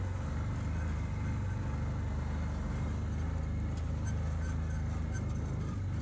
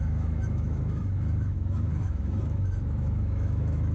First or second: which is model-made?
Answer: second